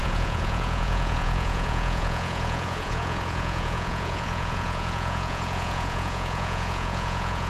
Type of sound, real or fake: fake